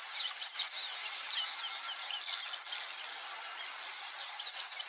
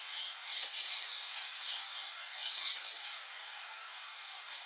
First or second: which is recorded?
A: first